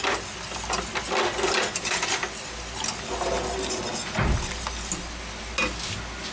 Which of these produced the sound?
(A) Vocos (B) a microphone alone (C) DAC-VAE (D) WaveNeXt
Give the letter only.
B